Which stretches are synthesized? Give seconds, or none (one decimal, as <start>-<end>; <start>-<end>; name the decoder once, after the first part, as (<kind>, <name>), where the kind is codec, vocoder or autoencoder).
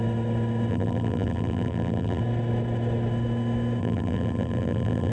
0.7-2.2 (vocoder, BigVGAN v2); 3.8-5.1